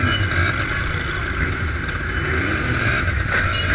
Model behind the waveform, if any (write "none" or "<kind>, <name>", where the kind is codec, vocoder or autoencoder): none